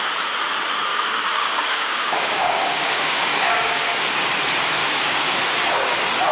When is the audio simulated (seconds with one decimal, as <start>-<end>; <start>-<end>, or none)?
0.9-4.3; 4.8-5.4

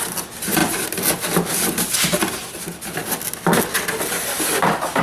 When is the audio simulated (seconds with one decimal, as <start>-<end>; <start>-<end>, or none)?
none